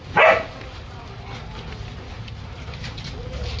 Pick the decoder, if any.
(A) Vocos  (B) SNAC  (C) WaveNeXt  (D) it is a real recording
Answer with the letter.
D